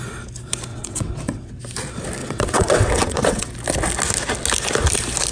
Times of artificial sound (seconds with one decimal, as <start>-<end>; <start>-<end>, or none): 0.7-1.6; 2.2-3.5